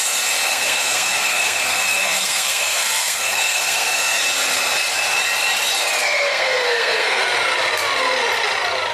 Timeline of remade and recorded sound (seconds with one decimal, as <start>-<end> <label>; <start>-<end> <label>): 0.0-0.5 recorded; 0.5-4.2 remade; 4.2-6.0 recorded; 6.0-7.2 remade; 7.2-8.9 recorded